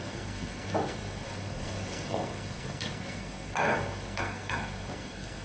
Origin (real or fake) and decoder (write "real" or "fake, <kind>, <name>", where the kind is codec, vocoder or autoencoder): fake, codec, SNAC